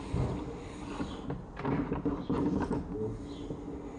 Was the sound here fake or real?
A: real